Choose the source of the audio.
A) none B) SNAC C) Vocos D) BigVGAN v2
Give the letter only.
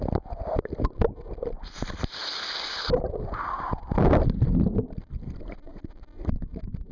A